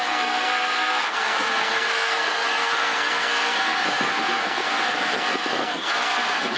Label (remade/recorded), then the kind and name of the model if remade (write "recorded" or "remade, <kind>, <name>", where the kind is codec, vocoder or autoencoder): remade, codec, SNAC